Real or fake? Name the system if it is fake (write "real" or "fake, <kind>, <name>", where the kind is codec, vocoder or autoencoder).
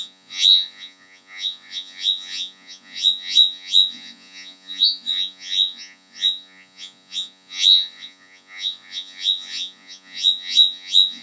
fake, vocoder, Vocos